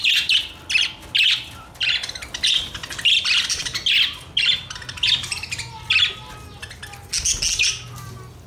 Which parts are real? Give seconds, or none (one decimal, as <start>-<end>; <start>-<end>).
0.0-8.5